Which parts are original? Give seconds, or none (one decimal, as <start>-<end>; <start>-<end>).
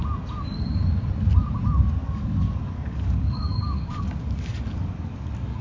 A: 0.0-2.0